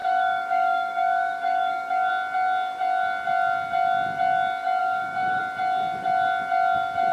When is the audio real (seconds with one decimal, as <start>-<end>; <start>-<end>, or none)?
2.1-4.8; 5.4-7.1